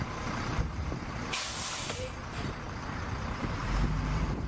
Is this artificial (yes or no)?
yes